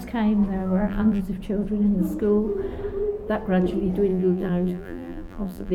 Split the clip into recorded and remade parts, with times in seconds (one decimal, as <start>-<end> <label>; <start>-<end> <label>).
0.0-0.6 recorded; 0.6-1.2 remade; 1.2-4.1 recorded; 4.1-5.7 remade